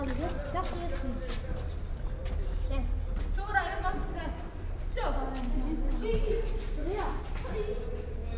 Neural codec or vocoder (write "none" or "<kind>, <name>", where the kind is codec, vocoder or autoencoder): none